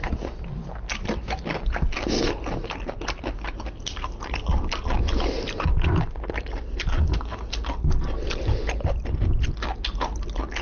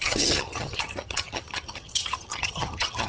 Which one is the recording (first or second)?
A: first